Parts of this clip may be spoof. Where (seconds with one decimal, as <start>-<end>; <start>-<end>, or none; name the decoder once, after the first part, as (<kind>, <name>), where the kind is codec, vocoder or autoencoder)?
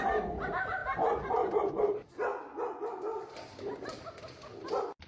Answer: none